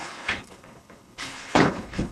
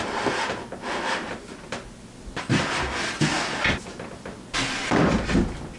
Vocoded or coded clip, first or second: first